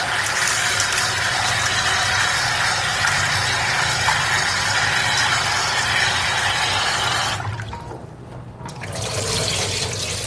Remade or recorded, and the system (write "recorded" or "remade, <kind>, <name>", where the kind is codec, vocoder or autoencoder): recorded